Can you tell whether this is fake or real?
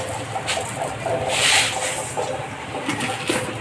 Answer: real